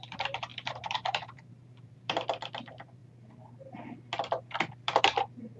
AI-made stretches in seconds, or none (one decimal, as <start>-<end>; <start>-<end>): 0.0-3.0; 5.0-5.6